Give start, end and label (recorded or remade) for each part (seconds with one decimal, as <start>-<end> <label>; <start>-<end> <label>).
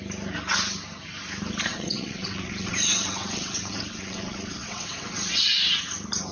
0.0-1.7 recorded; 1.7-5.5 remade; 5.5-6.3 recorded